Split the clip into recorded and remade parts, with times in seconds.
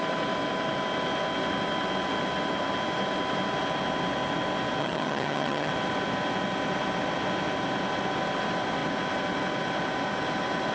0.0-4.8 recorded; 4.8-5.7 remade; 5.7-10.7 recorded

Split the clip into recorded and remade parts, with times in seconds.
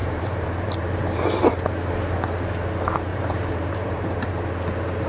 0.0-1.5 remade; 1.5-3.1 recorded; 3.1-4.3 remade; 4.3-5.1 recorded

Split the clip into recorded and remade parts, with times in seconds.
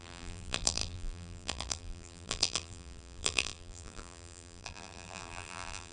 0.0-5.9 remade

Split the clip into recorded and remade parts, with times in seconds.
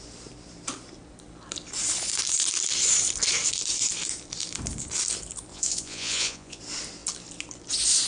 0.0-5.5 recorded; 5.5-6.6 remade; 6.6-8.1 recorded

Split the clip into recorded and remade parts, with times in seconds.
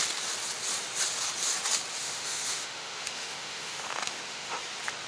0.0-2.0 recorded; 2.0-4.6 remade; 4.6-5.1 recorded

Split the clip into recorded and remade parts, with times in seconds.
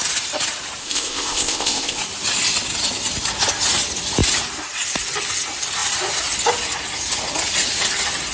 0.0-0.8 recorded; 0.8-2.0 remade; 2.0-8.3 recorded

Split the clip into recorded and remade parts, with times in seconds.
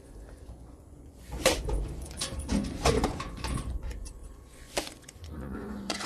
0.0-6.1 remade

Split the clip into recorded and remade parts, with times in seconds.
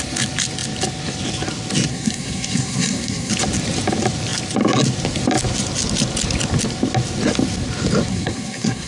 0.0-1.9 recorded; 1.9-3.3 remade; 3.3-8.1 recorded; 8.1-8.9 remade